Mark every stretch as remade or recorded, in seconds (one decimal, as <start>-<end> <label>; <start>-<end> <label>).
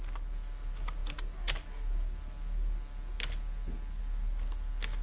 0.0-5.0 recorded